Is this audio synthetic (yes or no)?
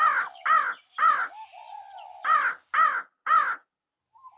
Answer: no